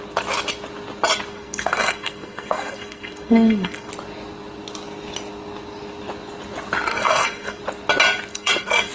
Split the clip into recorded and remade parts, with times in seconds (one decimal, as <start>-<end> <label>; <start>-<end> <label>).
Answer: 0.0-1.3 recorded; 1.3-3.9 remade; 3.9-6.9 recorded; 6.9-7.6 remade; 7.6-8.3 recorded; 8.3-8.9 remade